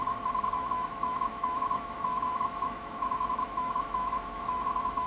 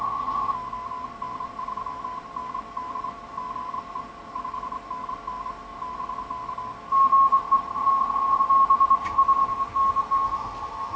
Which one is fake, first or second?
first